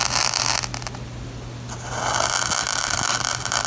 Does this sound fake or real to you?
real